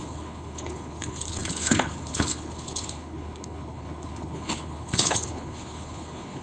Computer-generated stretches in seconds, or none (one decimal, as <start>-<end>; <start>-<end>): 0.0-6.4